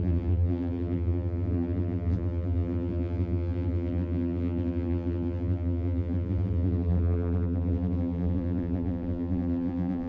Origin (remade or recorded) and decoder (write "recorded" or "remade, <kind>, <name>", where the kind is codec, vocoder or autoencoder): remade, vocoder, BigVGAN v2